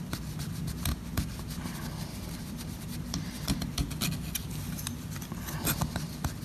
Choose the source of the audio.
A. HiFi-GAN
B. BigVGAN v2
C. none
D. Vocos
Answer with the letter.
B